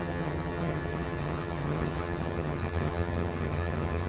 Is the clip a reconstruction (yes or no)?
yes